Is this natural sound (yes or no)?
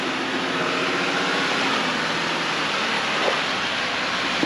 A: yes